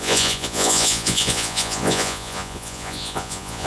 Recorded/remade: remade